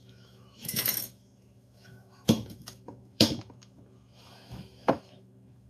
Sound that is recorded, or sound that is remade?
remade